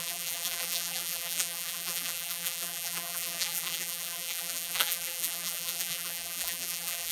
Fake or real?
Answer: fake